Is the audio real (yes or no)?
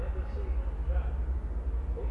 yes